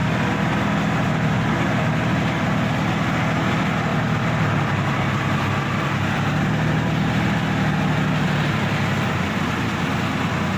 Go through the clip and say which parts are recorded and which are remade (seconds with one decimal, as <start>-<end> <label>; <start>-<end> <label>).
0.0-3.9 recorded; 3.9-4.5 remade; 4.5-10.6 recorded